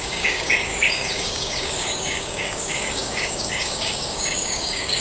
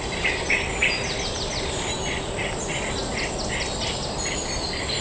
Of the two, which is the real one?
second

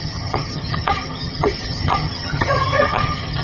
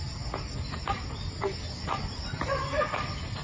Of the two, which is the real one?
second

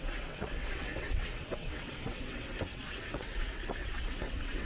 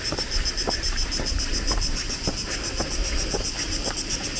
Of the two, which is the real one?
second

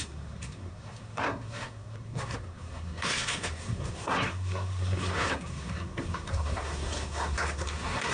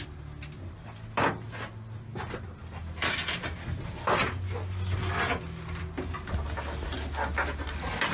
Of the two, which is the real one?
second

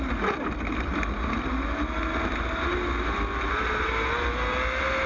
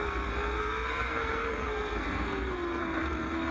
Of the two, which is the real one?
first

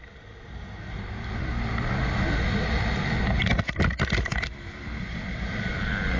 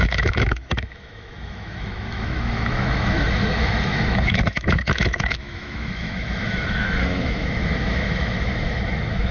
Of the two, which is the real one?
first